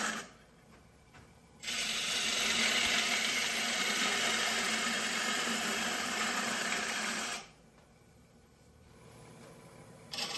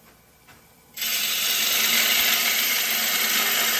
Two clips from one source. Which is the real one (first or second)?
second